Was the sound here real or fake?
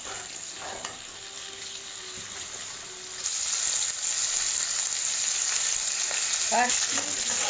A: real